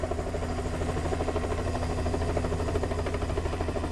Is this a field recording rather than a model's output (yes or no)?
yes